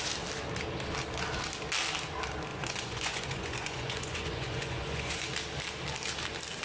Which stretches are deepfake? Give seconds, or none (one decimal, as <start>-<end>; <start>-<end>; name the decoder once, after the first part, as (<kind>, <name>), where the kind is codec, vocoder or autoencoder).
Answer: 2.5-5.2 (vocoder, Vocos)